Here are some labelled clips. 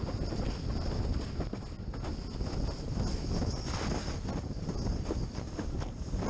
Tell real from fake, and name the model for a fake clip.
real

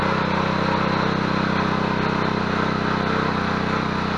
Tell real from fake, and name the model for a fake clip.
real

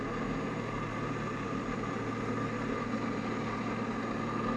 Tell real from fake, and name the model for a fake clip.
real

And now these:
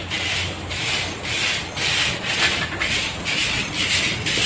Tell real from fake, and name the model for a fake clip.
real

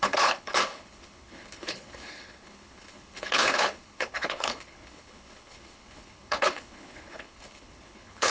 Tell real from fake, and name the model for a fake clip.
fake, codec, HILCodec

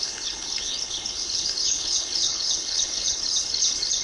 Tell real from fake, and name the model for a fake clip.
fake, codec, HILCodec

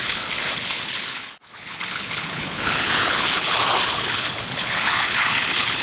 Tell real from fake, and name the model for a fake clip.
fake, codec, HILCodec